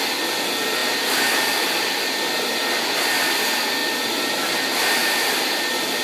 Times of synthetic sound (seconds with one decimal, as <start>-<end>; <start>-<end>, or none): 0.0-6.0